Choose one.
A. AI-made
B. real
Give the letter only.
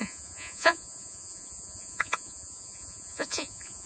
A